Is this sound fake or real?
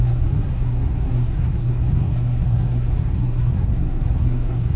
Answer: fake